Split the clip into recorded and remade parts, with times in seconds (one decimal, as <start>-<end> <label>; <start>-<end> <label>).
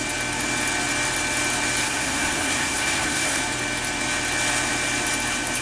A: 0.0-1.8 recorded; 1.8-3.4 remade; 3.4-5.6 recorded